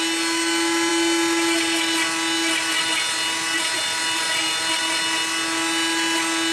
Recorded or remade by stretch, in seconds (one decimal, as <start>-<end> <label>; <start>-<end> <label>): 0.0-6.5 recorded